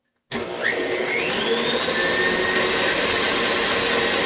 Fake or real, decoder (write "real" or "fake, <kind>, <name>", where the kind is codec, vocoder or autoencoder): real